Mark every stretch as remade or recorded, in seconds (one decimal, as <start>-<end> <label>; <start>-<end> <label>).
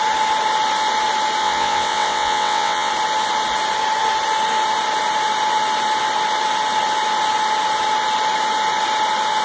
0.0-1.4 recorded; 1.4-2.9 remade; 2.9-9.4 recorded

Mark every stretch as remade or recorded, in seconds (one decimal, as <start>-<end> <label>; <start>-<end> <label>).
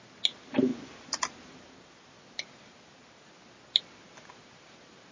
0.0-5.1 recorded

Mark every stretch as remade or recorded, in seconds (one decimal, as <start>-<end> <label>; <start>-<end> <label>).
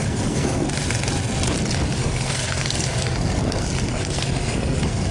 0.0-0.7 remade; 0.7-2.0 recorded; 2.0-5.1 remade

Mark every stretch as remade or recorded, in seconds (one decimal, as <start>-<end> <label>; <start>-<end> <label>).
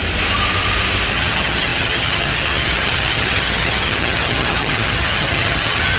0.0-1.1 recorded; 1.1-6.0 remade